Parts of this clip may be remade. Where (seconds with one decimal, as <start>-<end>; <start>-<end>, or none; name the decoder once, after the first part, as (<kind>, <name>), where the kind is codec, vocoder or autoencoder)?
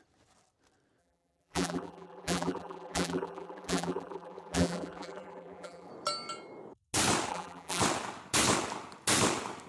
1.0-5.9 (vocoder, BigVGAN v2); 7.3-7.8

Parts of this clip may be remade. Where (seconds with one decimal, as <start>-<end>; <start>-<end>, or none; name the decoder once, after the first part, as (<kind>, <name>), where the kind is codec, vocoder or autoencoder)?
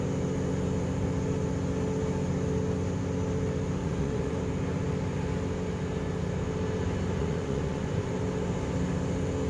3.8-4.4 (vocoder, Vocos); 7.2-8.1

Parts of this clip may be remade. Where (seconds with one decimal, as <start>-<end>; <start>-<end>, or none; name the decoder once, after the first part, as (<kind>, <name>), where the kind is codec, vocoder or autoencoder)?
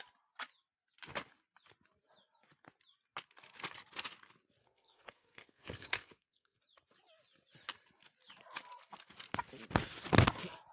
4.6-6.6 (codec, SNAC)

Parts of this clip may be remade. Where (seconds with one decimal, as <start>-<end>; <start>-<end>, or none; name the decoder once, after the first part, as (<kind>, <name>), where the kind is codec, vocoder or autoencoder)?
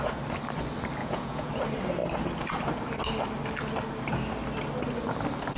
1.0-1.5 (vocoder, Vocos)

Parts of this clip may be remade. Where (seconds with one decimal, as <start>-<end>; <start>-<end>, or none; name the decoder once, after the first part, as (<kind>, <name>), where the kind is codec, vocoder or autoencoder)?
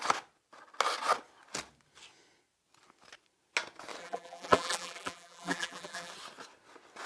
4.0-6.1 (vocoder, BigVGAN v2)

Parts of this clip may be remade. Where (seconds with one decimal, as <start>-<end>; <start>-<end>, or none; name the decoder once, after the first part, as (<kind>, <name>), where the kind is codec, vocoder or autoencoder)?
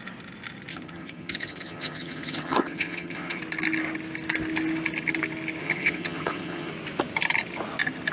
0.7-3.4 (vocoder, HiFi-GAN); 5.6-6.7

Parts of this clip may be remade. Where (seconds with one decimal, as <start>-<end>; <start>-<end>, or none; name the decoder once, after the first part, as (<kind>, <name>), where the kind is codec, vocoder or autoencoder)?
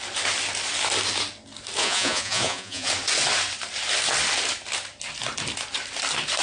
1.8-2.9 (vocoder, Vocos)